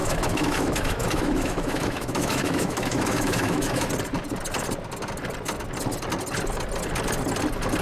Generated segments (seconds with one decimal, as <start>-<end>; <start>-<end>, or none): 0.0-3.9